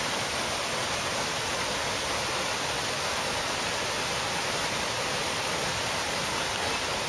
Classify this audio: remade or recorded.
recorded